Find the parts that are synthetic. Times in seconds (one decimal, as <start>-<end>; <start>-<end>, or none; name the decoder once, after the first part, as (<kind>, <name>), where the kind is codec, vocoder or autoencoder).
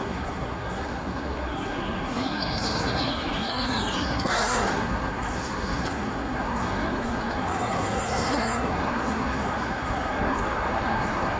0.0-11.4 (codec, SNAC)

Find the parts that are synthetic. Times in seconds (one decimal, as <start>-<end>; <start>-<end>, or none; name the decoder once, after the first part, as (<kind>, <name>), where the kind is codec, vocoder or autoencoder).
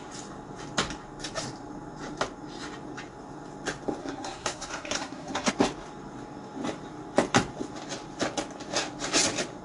4.0-5.5 (codec, SNAC)